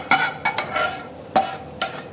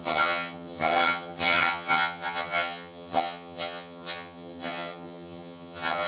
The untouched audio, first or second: first